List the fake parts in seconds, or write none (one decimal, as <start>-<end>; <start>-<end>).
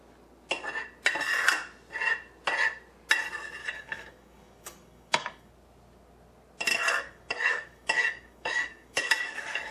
3.6-5.5; 6.7-9.7